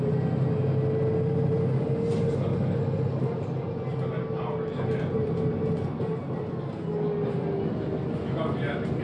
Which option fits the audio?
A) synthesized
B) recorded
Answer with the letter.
B